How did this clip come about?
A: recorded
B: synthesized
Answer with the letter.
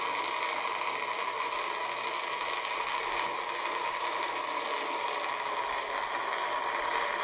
A